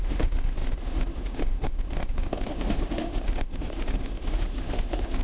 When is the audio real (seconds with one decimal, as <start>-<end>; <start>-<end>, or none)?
none